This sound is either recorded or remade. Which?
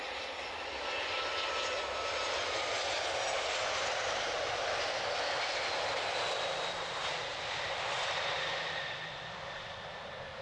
recorded